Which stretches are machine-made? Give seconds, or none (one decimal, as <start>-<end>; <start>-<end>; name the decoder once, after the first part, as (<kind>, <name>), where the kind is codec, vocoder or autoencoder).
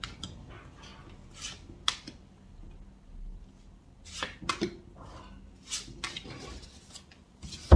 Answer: none